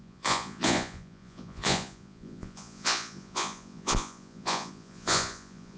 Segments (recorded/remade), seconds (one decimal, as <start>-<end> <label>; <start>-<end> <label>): 0.0-5.8 remade